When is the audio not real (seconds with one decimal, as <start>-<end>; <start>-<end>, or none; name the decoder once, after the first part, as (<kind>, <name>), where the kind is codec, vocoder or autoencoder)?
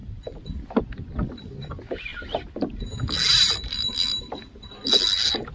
none